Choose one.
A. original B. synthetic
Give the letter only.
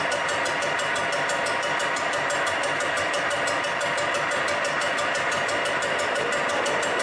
A